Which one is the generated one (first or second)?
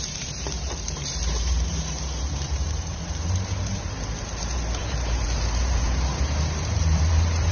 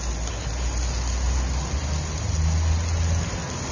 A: first